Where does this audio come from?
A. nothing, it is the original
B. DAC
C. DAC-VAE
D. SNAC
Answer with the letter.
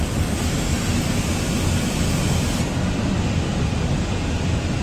A